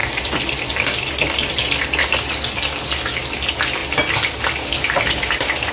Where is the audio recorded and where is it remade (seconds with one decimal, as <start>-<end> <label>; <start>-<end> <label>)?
0.0-5.7 recorded